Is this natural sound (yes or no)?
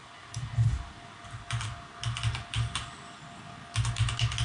yes